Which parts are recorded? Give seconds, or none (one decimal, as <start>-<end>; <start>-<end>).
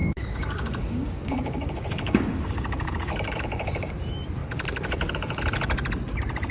3.9-6.5